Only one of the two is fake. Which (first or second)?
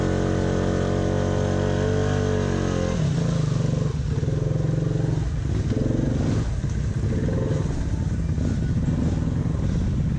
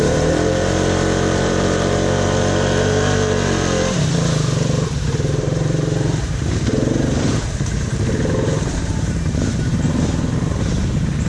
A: second